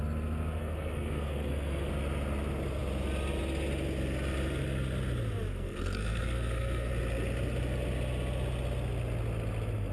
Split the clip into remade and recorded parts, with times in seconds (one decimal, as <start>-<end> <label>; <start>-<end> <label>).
0.0-0.6 recorded; 0.6-1.9 remade; 1.9-5.5 recorded; 5.5-6.9 remade; 6.9-9.9 recorded